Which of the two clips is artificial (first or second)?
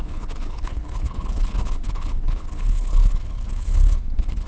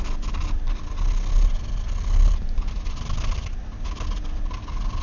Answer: first